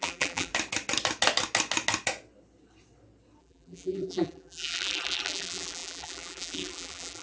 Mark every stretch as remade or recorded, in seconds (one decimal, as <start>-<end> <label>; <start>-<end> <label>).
0.0-0.5 remade; 0.5-3.4 recorded; 3.4-7.2 remade